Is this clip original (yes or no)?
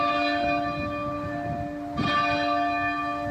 yes